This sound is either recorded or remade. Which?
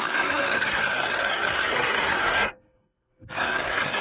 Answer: remade